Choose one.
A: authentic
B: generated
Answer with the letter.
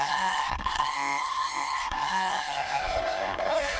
B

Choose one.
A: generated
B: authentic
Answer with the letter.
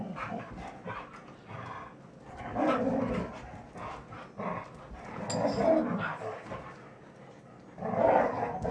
B